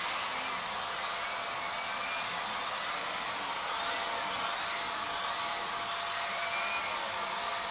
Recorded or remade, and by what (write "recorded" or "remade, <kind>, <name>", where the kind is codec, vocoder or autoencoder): recorded